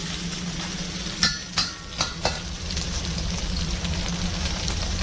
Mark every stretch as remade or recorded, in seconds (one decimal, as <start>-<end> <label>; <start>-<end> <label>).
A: 0.0-2.2 recorded; 2.2-3.0 remade; 3.0-4.3 recorded; 4.3-5.0 remade